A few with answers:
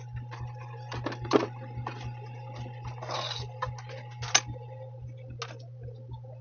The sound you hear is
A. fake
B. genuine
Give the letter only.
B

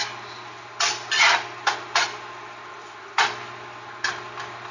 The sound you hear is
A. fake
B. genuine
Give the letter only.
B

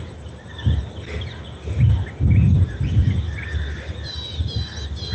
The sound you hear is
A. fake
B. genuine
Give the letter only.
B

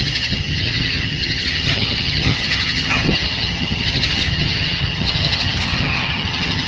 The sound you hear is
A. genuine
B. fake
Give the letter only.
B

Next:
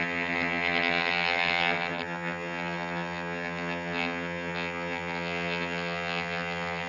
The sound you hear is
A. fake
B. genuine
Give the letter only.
A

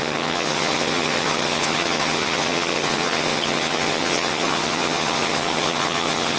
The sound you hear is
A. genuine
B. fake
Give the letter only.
B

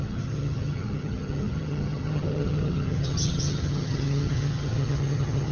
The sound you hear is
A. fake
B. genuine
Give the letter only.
A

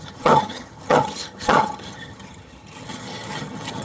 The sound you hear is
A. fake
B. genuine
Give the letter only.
A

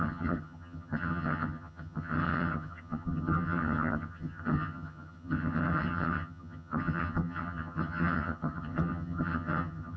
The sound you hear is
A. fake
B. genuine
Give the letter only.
A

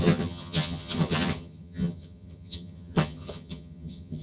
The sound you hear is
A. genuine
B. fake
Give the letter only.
B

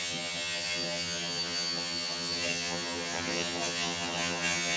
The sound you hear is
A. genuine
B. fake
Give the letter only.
B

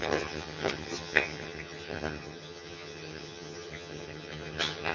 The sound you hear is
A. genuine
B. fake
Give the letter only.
B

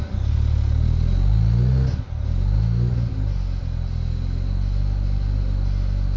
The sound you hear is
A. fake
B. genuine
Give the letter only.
B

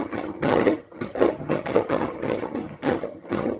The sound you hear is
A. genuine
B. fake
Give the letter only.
B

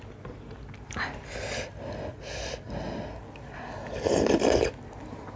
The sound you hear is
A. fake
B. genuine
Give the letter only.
B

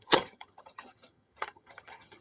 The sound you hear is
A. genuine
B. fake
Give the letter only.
B